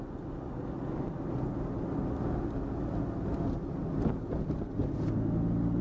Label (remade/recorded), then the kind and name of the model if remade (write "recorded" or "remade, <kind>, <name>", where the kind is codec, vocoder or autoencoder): recorded